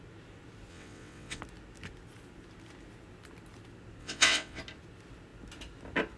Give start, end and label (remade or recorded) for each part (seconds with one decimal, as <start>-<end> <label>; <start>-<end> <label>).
0.0-0.7 recorded; 0.7-1.4 remade; 1.4-4.0 recorded; 4.0-4.6 remade; 4.6-6.2 recorded